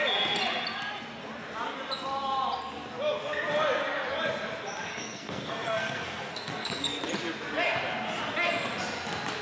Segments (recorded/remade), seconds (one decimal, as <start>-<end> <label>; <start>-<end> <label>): 0.0-4.9 recorded; 4.9-7.0 remade; 7.0-9.4 recorded